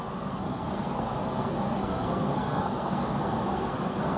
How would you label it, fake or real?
fake